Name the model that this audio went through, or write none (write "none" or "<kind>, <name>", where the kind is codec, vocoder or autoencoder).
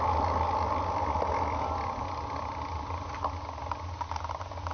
none